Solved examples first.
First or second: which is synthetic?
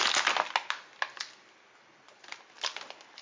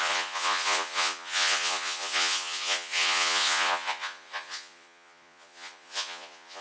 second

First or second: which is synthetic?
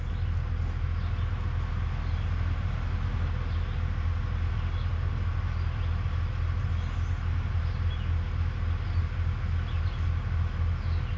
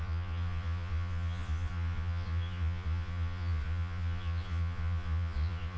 second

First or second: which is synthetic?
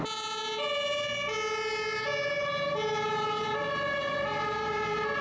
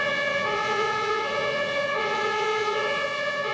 second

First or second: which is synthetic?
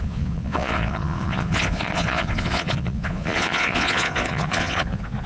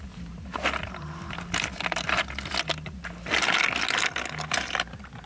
first